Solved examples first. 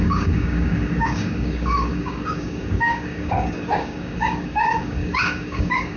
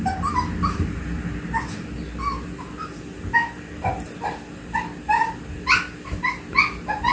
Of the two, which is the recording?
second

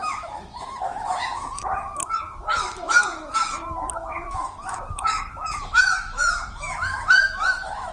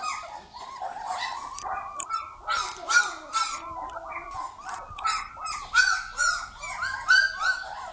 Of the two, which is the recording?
second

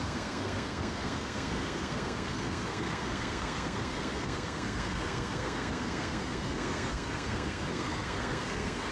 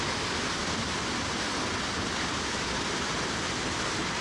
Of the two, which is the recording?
second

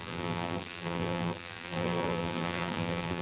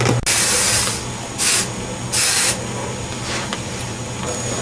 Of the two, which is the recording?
second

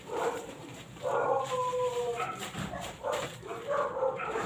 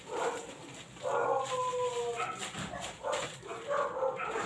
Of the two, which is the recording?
second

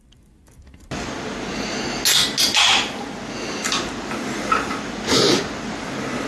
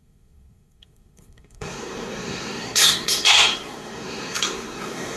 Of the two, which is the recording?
first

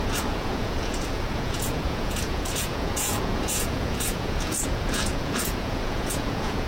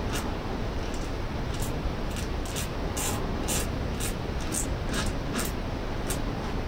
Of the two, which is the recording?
second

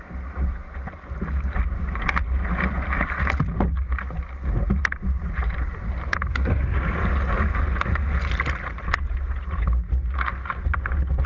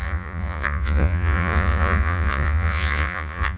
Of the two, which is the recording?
first